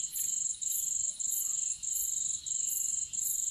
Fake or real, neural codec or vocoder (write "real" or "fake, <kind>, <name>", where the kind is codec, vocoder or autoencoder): fake, vocoder, Vocos